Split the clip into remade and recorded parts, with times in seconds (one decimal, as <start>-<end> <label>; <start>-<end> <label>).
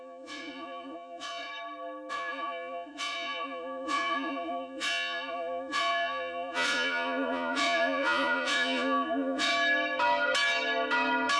0.0-1.5 remade; 1.5-2.1 recorded; 2.1-9.5 remade; 9.5-11.4 recorded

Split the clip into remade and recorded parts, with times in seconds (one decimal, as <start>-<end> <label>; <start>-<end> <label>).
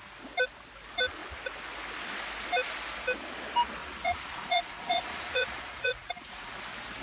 0.0-3.8 recorded; 3.8-6.5 remade; 6.5-7.0 recorded